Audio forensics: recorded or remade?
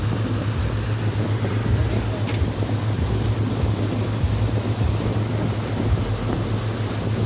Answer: recorded